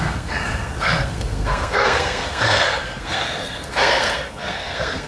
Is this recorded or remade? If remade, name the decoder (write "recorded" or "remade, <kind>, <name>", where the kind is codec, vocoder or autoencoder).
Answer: remade, codec, SNAC